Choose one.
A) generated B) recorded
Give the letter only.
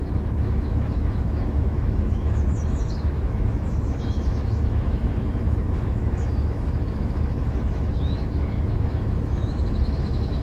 A